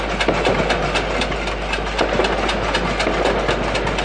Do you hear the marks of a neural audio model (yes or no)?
no